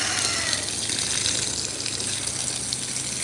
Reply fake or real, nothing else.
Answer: real